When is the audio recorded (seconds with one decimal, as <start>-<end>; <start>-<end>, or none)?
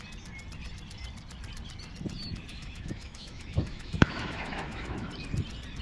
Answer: 0.0-2.5; 5.1-5.8